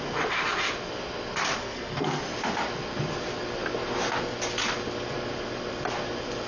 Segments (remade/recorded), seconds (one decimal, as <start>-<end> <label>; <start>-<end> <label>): 0.0-1.6 recorded; 1.6-2.2 remade; 2.2-6.5 recorded